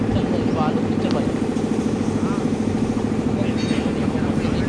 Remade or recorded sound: recorded